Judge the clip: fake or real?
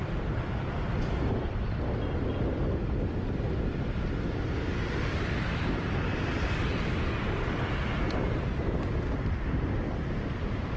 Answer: fake